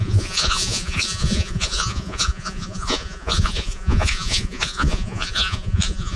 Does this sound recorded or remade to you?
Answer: remade